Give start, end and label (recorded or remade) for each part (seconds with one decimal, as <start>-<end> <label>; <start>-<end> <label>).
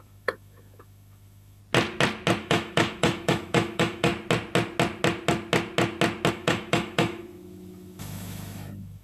0.0-1.6 remade; 1.6-2.4 recorded; 2.4-4.1 remade; 4.1-6.3 recorded; 6.3-9.0 remade